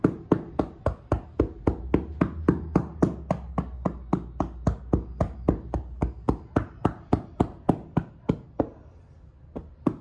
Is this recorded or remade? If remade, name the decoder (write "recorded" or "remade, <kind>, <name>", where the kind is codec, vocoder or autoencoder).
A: recorded